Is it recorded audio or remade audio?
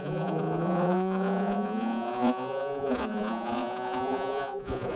remade